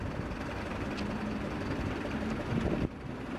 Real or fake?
real